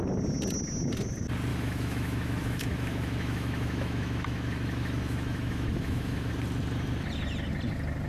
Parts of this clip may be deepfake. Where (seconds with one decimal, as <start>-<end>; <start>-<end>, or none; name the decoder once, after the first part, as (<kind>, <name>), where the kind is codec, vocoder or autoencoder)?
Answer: 1.5-6.3 (autoencoder, DAC-VAE)